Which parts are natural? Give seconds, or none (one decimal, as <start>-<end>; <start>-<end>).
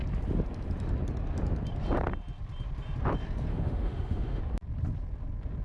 0.0-3.5; 4.4-5.6